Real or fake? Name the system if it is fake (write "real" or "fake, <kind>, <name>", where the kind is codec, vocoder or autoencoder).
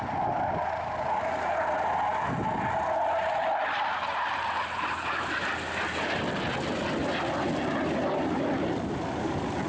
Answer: real